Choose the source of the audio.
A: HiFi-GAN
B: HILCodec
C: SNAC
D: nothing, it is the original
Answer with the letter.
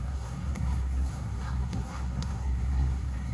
C